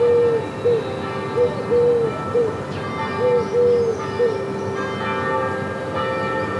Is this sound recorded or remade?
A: recorded